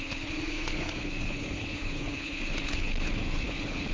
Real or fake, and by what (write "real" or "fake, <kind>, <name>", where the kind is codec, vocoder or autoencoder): fake, codec, HILCodec